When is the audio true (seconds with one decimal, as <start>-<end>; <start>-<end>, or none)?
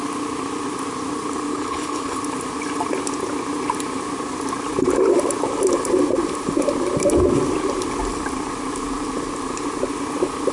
0.0-1.5; 2.2-10.5